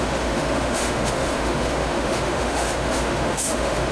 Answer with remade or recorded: remade